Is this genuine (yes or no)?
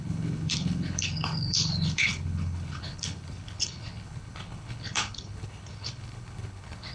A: no